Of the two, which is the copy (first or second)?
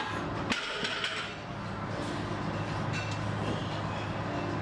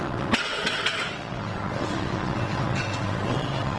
second